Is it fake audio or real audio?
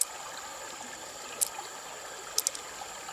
real